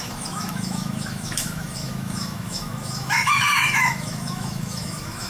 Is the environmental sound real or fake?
fake